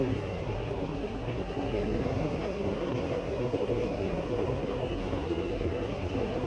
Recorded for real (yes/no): no